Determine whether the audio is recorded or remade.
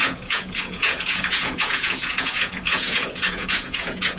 remade